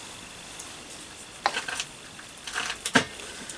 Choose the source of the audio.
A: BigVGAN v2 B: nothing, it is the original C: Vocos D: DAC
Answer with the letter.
A